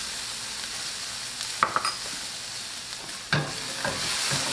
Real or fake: real